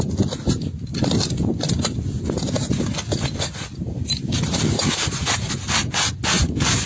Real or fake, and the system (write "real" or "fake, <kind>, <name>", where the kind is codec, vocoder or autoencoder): real